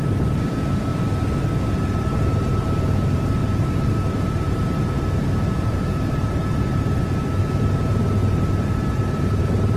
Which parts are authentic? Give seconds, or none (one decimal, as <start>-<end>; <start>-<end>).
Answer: 0.9-2.0